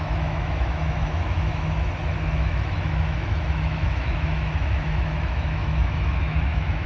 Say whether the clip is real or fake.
fake